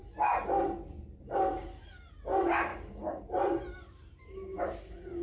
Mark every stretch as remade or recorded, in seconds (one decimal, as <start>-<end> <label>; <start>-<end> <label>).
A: 0.0-2.7 recorded; 2.7-4.2 remade; 4.2-5.2 recorded

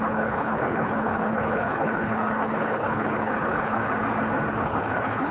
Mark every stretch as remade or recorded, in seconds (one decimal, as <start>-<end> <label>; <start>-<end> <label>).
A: 0.0-3.8 remade; 3.8-4.5 recorded; 4.5-5.3 remade

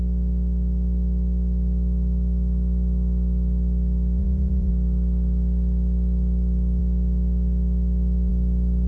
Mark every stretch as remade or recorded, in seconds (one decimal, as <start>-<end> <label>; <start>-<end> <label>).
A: 0.0-4.2 recorded; 4.2-4.7 remade; 4.7-8.9 recorded

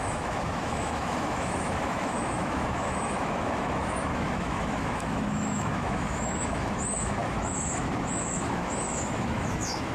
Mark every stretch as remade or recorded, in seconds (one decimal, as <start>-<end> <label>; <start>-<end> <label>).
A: 0.0-9.9 remade

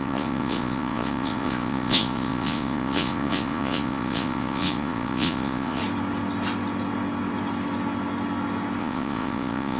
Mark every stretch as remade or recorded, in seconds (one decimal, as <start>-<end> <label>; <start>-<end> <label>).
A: 0.0-5.8 remade; 5.8-8.8 recorded; 8.8-9.8 remade

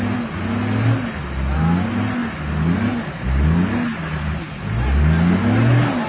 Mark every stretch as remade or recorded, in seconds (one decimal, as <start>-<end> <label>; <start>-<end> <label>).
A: 0.0-6.1 recorded

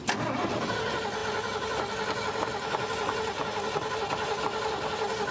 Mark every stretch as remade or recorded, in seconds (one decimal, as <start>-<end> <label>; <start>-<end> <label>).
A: 0.0-5.3 recorded